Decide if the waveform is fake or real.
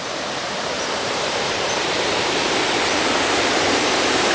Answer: fake